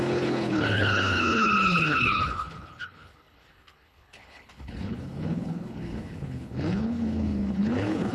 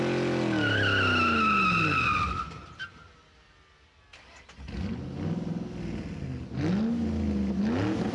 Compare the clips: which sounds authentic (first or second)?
second